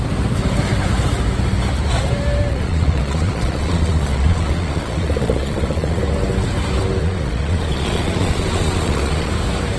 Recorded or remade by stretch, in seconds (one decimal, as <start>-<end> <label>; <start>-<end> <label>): 0.0-2.5 recorded; 2.5-6.0 remade; 6.0-7.0 recorded; 7.0-9.3 remade; 9.3-9.8 recorded